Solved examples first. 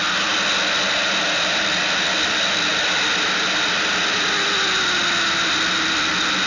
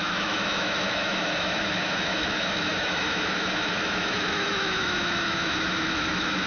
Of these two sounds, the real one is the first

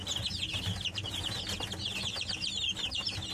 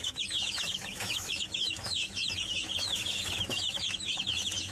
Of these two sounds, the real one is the first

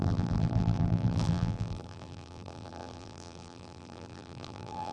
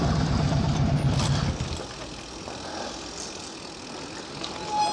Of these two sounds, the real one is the second